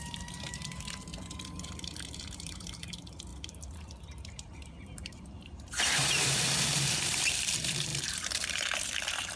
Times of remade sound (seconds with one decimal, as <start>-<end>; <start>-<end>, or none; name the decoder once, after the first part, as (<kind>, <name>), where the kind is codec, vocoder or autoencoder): 0.0-1.1 (vocoder, BigVGAN v2); 1.6-9.4